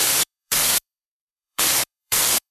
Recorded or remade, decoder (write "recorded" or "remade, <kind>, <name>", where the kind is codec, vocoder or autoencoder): remade, codec, SNAC